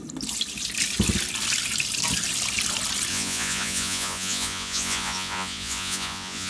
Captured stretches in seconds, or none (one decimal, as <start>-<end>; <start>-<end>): 0.0-3.1